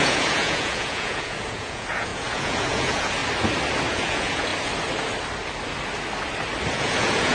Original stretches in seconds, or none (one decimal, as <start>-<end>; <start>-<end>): 3.2-3.9; 4.5-6.7